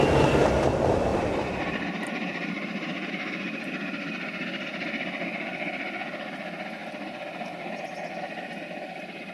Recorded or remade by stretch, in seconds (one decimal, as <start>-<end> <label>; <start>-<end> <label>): 0.0-1.1 recorded; 1.1-3.1 remade; 3.1-9.3 recorded